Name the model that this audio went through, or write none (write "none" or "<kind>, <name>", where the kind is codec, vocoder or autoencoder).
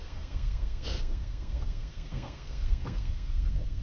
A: codec, SNAC